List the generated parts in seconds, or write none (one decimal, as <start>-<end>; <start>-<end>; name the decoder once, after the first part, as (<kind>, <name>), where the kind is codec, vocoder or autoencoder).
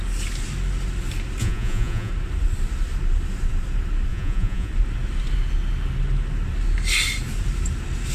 1.4-2.1 (vocoder, Vocos); 4.1-4.7